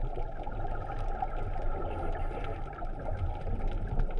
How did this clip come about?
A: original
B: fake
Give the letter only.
A